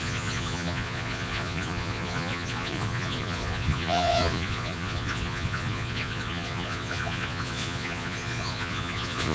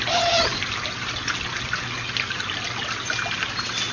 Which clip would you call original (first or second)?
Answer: second